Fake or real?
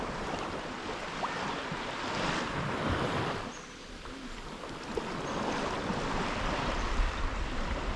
real